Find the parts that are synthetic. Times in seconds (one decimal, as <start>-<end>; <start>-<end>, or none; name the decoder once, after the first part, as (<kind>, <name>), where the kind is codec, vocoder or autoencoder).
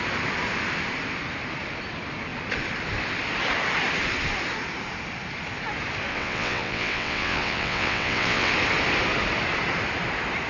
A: 6.1-8.5 (vocoder, WaveNeXt)